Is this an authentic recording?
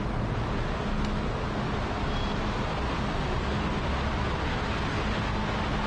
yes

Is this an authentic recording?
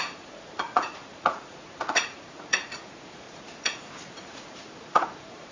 no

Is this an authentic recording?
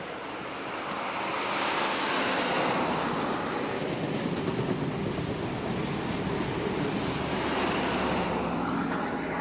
yes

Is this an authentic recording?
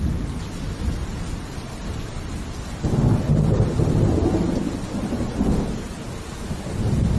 yes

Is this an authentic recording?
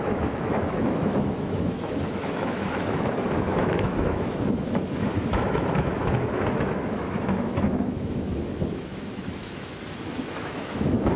no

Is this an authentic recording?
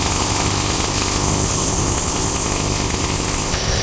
no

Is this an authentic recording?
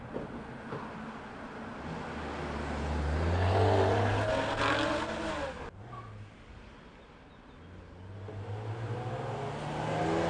yes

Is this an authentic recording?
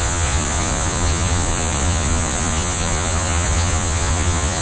no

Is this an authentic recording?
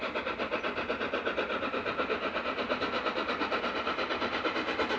yes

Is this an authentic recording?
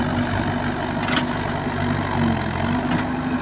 yes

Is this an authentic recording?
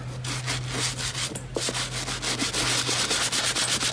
yes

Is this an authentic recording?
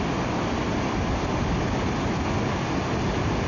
yes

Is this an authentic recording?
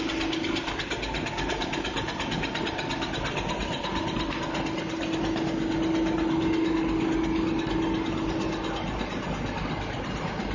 yes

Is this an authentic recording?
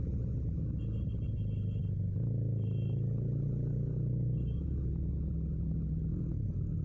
yes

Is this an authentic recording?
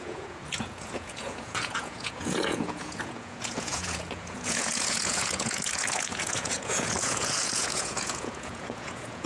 no